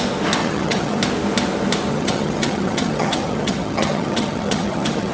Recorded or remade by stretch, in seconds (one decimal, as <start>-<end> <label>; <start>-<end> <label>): 0.0-0.4 recorded; 0.4-1.0 remade; 1.0-1.9 recorded; 1.9-5.1 remade